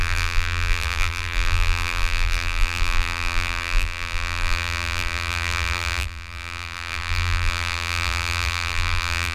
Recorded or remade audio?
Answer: remade